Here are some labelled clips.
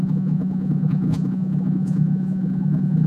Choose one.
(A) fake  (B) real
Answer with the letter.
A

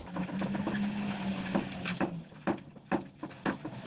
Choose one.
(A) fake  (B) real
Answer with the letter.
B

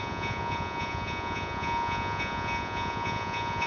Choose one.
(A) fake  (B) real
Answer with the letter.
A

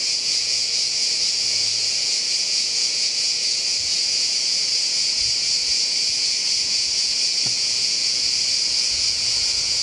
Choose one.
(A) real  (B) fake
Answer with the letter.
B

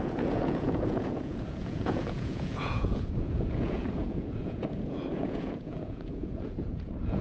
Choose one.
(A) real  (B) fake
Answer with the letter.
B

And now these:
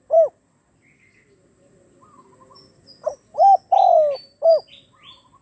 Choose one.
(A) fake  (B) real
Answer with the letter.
B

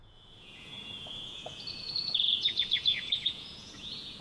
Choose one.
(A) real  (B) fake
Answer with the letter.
B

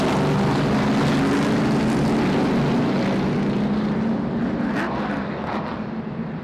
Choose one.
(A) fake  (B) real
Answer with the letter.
B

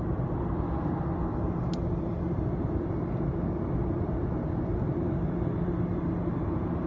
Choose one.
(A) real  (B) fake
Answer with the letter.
A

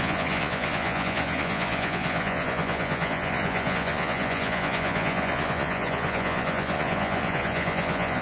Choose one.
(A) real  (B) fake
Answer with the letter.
B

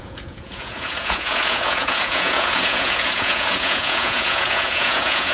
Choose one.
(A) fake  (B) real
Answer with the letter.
A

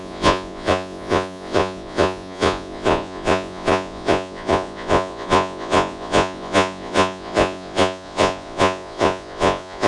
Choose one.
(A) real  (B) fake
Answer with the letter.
B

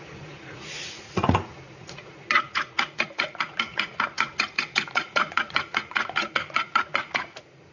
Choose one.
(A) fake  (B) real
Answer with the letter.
A